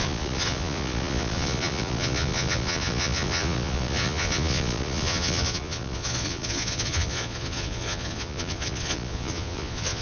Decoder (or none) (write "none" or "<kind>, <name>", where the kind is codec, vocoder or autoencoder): vocoder, Vocos